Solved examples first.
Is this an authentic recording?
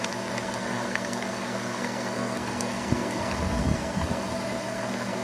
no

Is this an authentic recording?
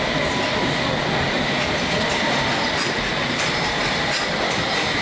yes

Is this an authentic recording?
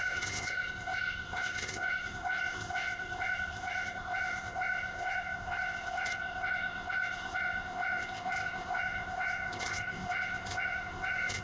no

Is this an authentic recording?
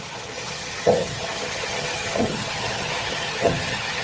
no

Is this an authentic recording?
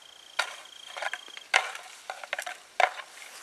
yes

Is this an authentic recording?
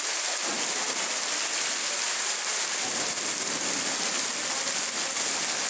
yes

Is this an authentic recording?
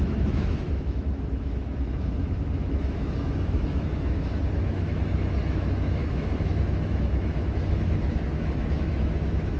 no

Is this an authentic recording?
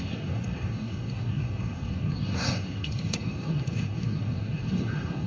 no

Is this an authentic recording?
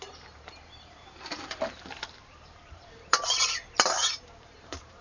no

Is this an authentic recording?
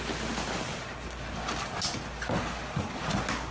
yes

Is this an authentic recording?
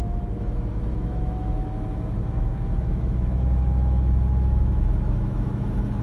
no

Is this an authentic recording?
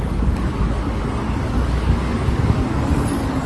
no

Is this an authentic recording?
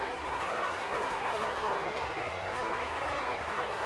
no